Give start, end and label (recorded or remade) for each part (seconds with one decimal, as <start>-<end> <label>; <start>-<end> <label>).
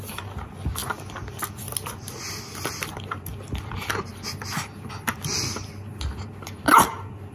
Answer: 0.0-7.3 recorded